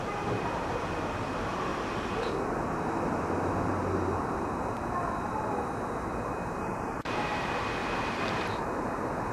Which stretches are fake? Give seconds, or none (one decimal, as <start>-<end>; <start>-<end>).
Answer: 0.0-1.7; 6.0-7.8; 8.6-9.3